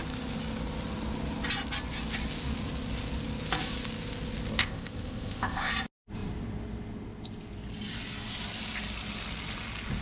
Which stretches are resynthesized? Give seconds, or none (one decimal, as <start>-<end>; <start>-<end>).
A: 4.6-5.7